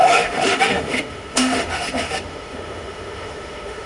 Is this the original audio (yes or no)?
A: no